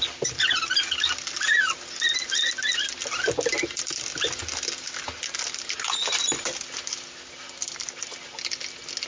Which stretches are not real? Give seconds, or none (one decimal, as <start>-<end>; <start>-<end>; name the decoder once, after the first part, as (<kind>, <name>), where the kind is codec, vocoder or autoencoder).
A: none